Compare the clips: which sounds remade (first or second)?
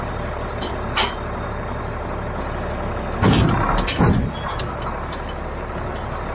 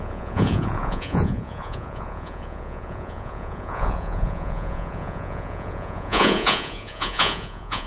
second